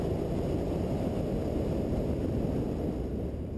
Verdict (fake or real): real